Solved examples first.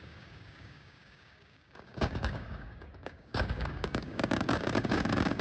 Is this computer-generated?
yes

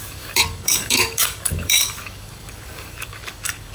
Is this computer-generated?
yes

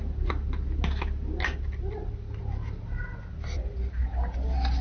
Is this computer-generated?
no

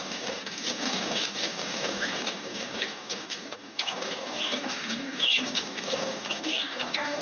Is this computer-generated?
yes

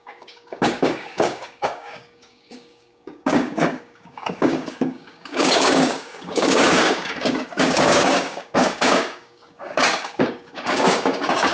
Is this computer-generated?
yes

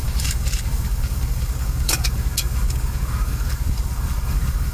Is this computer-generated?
yes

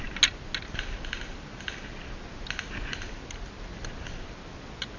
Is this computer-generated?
no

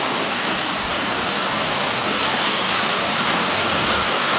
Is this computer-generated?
yes